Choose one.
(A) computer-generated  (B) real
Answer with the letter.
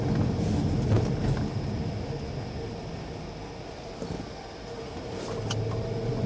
B